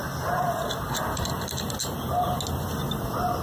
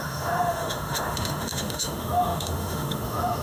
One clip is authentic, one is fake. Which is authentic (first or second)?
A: first